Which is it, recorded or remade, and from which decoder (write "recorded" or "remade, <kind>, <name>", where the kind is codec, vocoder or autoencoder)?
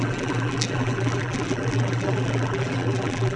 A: remade, vocoder, BigVGAN v2